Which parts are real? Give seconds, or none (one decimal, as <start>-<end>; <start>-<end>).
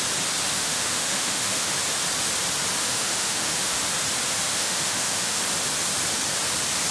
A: 0.0-0.5; 1.7-2.8; 3.8-4.5; 5.4-6.9